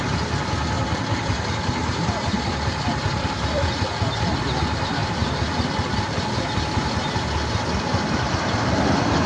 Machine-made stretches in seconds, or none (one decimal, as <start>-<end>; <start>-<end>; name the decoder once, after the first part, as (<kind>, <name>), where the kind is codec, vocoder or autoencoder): 1.8-3.7 (vocoder, BigVGAN v2); 5.0-5.5